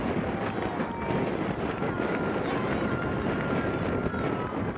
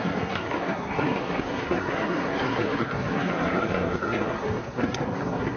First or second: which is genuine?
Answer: first